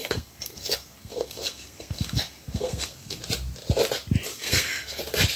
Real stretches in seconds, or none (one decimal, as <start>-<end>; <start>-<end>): 3.2-4.3; 5.0-5.4